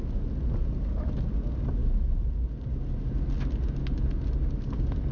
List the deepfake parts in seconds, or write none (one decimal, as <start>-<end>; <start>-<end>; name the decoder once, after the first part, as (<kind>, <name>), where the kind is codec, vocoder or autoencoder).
none